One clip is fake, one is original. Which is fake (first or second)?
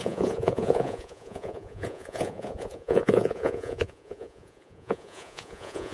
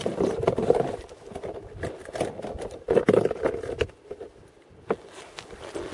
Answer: first